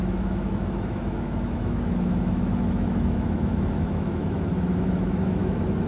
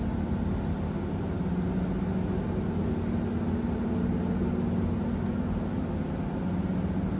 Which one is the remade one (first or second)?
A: first